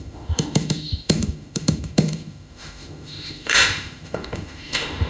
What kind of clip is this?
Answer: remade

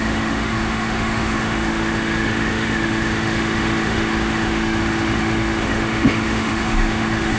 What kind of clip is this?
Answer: remade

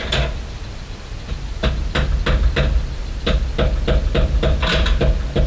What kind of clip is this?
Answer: recorded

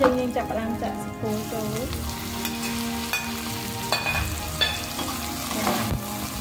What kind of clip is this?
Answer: recorded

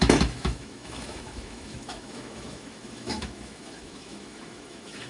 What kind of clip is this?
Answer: remade